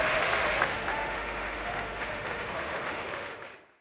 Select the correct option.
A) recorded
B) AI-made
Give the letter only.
B